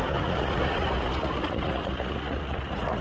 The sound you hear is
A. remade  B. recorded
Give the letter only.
A